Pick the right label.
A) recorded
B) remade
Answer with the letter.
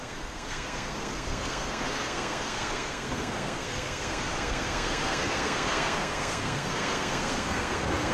B